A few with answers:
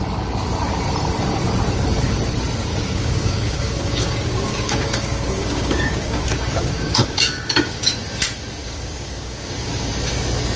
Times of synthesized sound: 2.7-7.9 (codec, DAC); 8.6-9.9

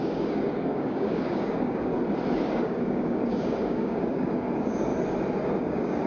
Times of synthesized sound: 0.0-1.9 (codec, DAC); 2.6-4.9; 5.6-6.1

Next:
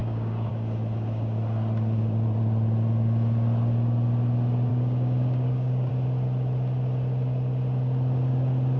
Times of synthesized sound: 0.0-0.5 (codec, DAC); 4.7-5.9